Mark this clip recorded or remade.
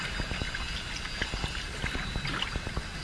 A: recorded